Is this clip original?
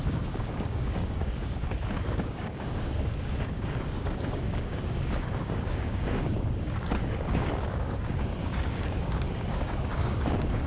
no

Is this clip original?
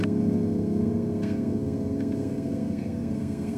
no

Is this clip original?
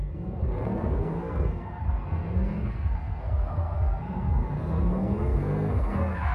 no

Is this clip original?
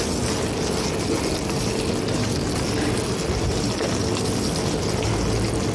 yes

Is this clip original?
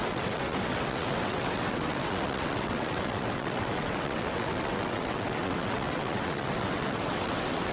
no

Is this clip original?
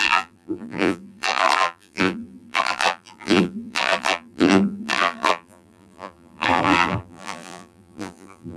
no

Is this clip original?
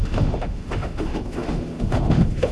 no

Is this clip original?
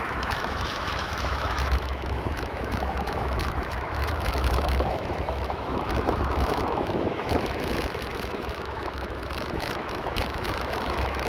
no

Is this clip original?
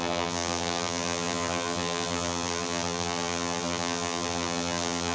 no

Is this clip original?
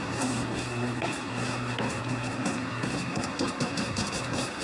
no